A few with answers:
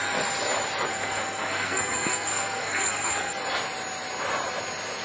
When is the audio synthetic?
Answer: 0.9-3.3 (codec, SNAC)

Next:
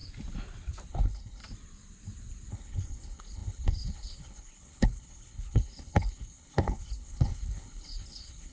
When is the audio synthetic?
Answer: 0.9-1.4 (codec, HILCodec); 2.5-8.5

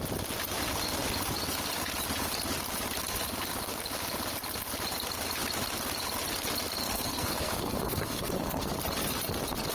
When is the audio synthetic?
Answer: 6.8-8.7 (codec, SNAC)

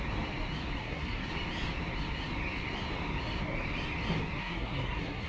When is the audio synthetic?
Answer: 0.8-1.3 (codec, SNAC); 4.4-5.3

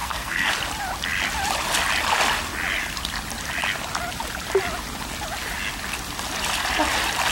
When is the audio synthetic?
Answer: 0.0-0.5 (codec, SNAC)

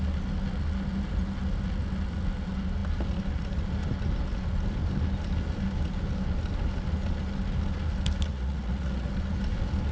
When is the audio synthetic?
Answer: 8.3-9.1 (vocoder, Vocos)